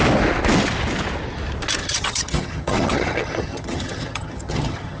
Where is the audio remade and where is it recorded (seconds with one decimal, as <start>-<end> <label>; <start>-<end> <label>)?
0.0-1.8 recorded; 1.8-5.0 remade